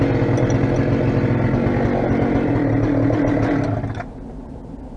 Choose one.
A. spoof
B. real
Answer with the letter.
B